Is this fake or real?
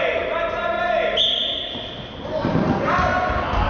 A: real